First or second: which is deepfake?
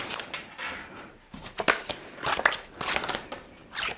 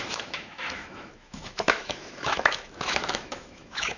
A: second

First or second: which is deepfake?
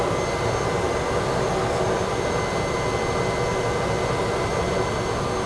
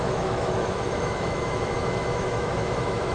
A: second